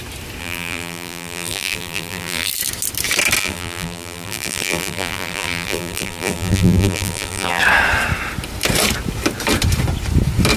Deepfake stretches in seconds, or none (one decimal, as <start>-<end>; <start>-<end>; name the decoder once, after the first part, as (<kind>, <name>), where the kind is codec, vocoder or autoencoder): 0.4-2.5 (vocoder, BigVGAN v2); 3.4-7.6